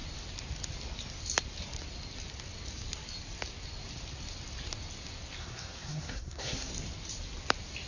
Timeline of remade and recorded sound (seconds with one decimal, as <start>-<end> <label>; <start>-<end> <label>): 0.0-5.4 recorded; 5.4-6.7 remade; 6.7-7.9 recorded